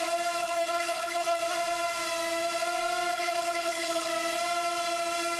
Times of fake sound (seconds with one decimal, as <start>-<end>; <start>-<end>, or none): 0.4-1.4; 3.1-4.1